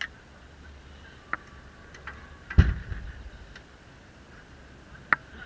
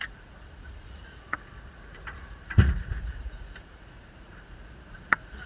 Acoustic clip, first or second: first